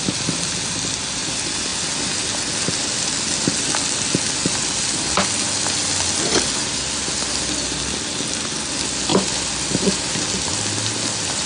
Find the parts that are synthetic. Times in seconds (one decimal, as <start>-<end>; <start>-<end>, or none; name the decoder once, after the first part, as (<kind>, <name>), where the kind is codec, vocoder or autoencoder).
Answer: none